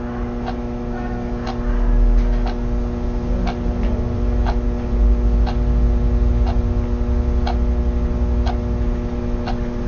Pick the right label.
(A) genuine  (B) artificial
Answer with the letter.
A